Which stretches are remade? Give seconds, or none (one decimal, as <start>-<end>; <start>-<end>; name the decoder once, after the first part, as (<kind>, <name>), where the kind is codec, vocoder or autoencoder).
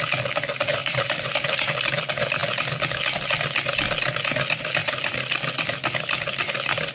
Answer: 0.8-1.9 (vocoder, BigVGAN v2); 4.8-5.5